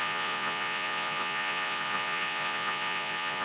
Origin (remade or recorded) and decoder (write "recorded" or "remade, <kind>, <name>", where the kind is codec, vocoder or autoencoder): remade, vocoder, Vocos